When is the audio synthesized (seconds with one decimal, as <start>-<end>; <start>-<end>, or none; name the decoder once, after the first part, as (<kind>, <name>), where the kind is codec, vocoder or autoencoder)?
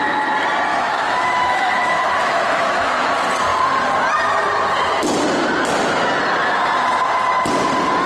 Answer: 0.7-3.1 (autoencoder, DAC-VAE)